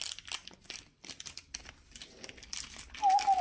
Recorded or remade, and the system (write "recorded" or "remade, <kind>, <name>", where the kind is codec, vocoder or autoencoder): recorded